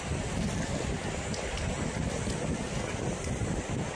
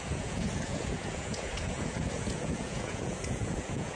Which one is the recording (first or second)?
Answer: first